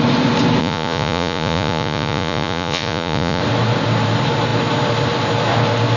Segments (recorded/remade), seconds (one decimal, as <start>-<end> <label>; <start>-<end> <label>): 0.0-0.6 recorded; 0.6-3.4 remade; 3.4-6.0 recorded